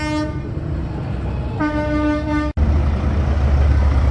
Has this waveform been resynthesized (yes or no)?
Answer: no